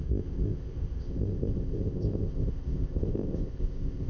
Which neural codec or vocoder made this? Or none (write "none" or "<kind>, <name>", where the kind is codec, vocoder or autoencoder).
codec, ZipCodec